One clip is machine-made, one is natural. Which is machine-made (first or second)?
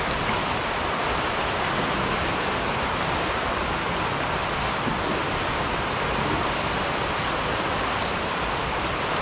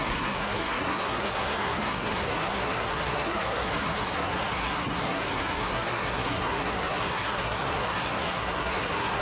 second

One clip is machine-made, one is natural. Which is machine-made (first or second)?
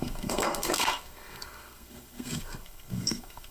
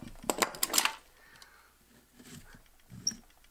first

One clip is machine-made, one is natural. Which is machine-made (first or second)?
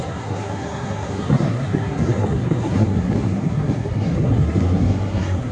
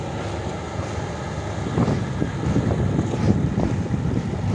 first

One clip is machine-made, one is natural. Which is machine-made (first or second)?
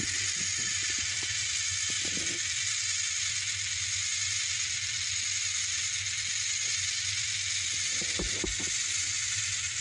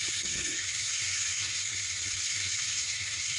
second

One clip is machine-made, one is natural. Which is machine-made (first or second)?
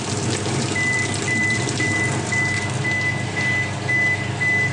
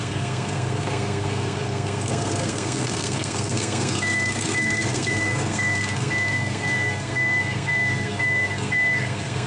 second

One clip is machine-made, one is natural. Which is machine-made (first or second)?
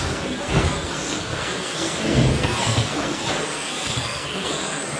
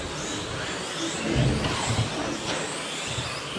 first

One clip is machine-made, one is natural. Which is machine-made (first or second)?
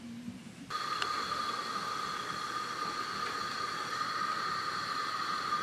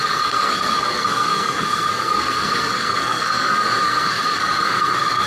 second